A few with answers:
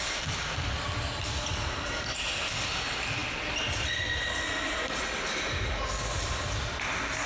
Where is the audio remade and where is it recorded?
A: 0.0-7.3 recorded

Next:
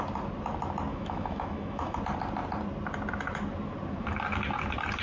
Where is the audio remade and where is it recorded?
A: 0.0-0.9 recorded; 0.9-2.0 remade; 2.0-5.0 recorded

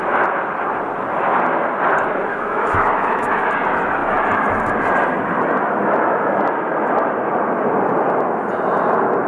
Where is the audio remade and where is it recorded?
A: 0.0-2.3 recorded; 2.3-3.3 remade; 3.3-9.3 recorded

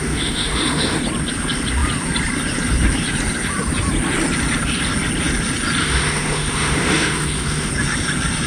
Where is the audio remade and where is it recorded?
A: 0.0-1.0 remade; 1.0-5.8 recorded; 5.8-7.7 remade; 7.7-8.5 recorded

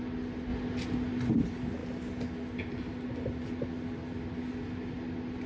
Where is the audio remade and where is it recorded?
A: 0.0-5.5 recorded

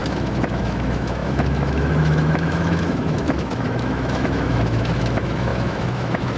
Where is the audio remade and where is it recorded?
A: 0.0-6.4 remade

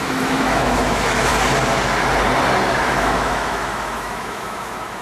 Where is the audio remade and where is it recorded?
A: 0.0-1.3 remade; 1.3-2.8 recorded; 2.8-5.0 remade